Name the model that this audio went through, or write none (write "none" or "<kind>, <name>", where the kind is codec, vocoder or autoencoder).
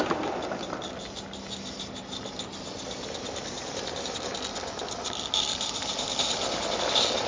none